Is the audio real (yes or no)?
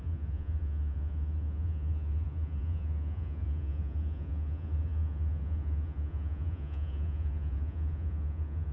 no